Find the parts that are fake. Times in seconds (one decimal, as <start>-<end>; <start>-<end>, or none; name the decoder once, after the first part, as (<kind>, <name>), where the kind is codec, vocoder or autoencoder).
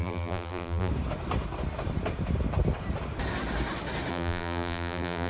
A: 0.0-0.9 (vocoder, BigVGAN v2); 4.1-5.3